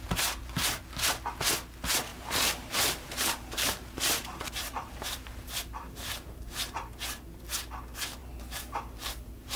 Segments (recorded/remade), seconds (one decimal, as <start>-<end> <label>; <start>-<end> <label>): 0.0-2.1 recorded; 2.1-7.0 remade; 7.0-8.2 recorded; 8.2-9.6 remade